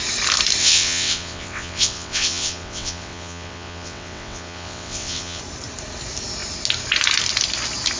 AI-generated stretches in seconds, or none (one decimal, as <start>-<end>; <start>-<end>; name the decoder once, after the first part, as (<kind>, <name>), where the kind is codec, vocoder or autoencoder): 0.6-5.4 (vocoder, WaveNeXt)